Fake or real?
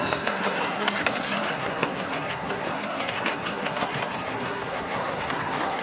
fake